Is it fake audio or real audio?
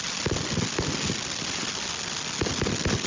real